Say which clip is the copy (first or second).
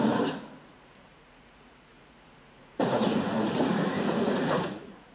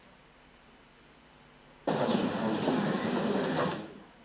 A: first